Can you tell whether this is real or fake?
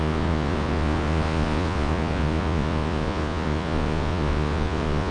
fake